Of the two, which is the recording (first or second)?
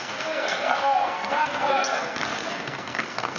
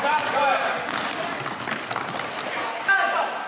second